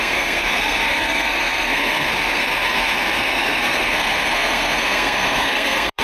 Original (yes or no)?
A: no